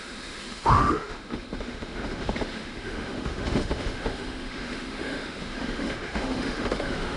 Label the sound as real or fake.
fake